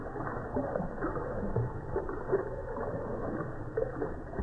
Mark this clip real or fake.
real